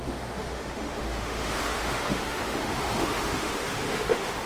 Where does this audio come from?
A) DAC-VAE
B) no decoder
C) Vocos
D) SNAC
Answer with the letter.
A